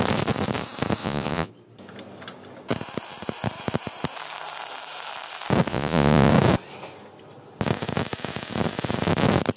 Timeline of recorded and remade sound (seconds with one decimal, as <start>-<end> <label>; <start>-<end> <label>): 0.0-1.0 recorded; 1.0-1.5 remade; 1.5-5.7 recorded; 5.7-6.3 remade; 6.3-9.6 recorded